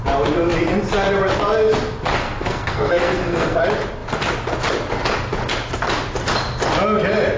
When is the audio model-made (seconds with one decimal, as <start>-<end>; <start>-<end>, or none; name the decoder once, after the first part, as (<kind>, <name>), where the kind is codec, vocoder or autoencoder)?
2.2-3.6 (codec, SNAC)